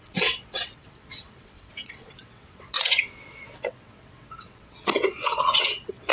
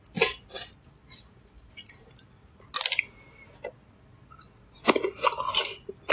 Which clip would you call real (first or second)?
second